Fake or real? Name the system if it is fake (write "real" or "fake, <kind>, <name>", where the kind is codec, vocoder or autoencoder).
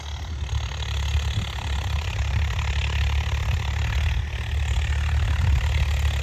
real